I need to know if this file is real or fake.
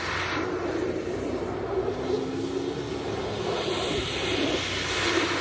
real